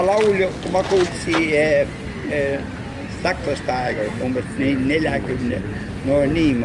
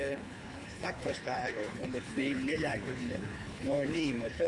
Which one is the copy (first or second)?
second